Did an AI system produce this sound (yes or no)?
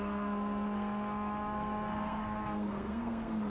yes